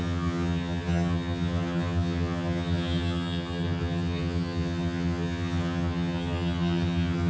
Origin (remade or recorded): remade